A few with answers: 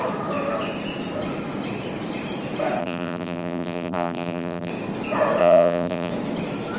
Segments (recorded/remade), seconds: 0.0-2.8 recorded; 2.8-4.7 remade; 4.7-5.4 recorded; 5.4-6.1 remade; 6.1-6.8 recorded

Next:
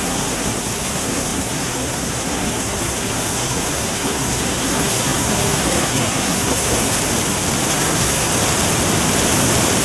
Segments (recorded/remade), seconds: 0.0-7.0 remade; 7.0-7.7 recorded; 7.7-8.3 remade; 8.3-9.8 recorded

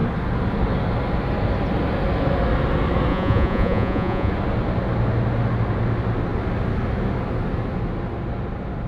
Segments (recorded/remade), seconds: 0.0-3.1 recorded; 3.1-4.3 remade; 4.3-8.9 recorded

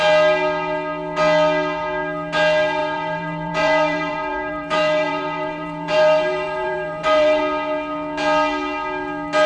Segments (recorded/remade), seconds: 0.0-2.8 recorded; 2.8-7.4 remade; 7.4-9.5 recorded